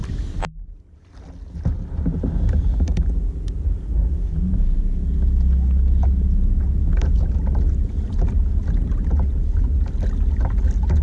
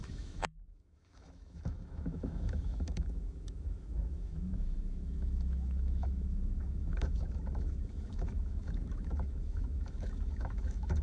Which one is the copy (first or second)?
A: second